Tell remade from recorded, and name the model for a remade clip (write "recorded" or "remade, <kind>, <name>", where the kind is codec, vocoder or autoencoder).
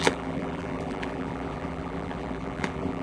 remade, vocoder, BigVGAN v2